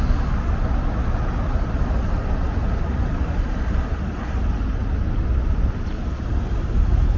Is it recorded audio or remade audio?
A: recorded